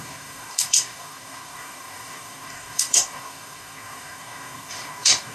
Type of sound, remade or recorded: remade